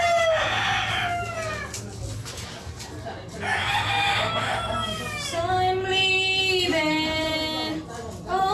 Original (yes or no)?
yes